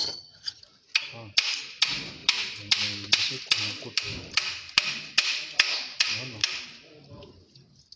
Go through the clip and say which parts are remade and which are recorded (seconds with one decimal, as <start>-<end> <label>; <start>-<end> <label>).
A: 0.0-0.6 remade; 0.6-8.0 recorded